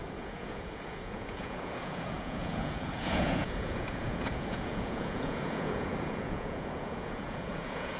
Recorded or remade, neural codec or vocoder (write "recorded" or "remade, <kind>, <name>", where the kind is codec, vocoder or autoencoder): remade, vocoder, Vocos